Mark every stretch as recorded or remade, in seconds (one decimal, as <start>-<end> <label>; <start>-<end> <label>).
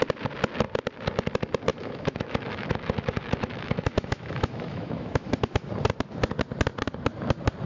0.0-1.7 recorded; 1.7-5.7 remade; 5.7-7.7 recorded